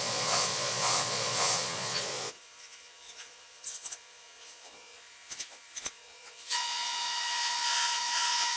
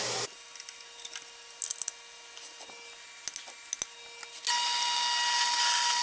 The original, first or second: second